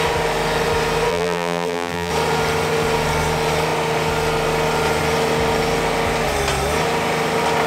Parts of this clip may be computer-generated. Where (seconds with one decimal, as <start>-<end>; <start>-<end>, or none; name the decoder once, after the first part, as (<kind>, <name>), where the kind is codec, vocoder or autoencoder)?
1.1-2.1 (vocoder, BigVGAN v2)